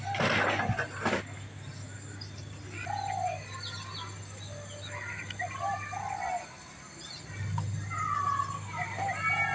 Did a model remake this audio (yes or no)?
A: no